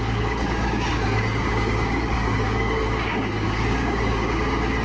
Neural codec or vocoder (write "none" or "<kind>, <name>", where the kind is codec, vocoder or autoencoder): codec, DAC